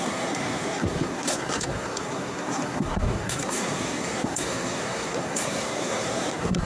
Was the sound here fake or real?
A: fake